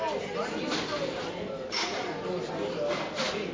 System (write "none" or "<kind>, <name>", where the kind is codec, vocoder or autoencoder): none